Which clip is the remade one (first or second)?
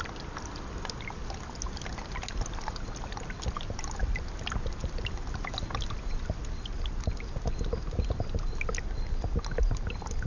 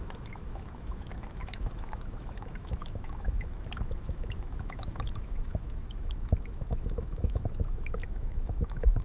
second